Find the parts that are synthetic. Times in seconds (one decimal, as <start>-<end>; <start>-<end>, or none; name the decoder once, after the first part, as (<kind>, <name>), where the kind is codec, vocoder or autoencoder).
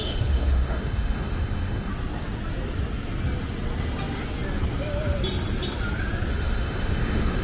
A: 0.0-1.9 (autoencoder, DAC-VAE); 6.3-7.4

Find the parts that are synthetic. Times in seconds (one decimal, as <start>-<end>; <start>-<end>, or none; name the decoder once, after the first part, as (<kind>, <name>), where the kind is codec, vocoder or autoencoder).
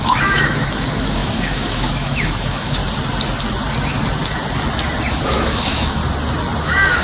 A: 0.0-2.8 (autoencoder, DAC-VAE); 5.1-6.0; 6.6-7.0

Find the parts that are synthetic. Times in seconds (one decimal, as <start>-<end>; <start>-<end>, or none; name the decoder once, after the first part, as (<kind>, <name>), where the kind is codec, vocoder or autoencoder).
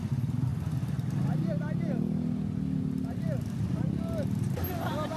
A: none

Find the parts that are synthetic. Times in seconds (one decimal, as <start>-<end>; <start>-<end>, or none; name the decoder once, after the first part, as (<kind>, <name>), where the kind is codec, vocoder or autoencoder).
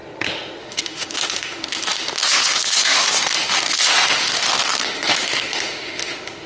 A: 0.6-6.5 (autoencoder, DAC-VAE)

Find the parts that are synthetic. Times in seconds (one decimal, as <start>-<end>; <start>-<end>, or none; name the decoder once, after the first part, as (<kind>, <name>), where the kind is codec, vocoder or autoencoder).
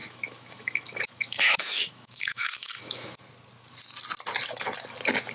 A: 0.0-3.2 (autoencoder, DAC-VAE)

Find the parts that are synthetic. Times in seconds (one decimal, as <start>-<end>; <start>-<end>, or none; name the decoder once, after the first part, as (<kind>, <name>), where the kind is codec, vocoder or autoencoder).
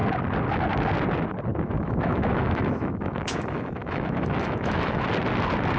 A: 1.5-5.0 (autoencoder, DAC-VAE)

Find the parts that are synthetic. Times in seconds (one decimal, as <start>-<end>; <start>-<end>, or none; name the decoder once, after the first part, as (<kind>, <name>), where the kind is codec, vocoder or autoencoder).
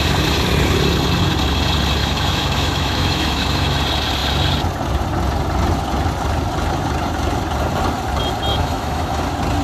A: 2.0-3.8 (autoencoder, DAC-VAE); 8.5-9.2